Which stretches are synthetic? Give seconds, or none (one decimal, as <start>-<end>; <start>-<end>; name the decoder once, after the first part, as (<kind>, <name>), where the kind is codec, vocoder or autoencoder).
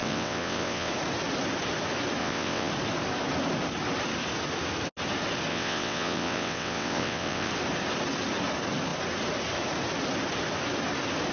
0.0-0.9 (vocoder, WaveNeXt); 2.2-2.7; 5.5-7.5